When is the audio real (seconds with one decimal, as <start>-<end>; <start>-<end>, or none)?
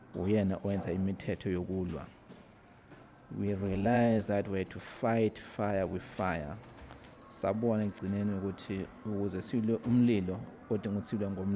0.0-3.6; 4.2-11.6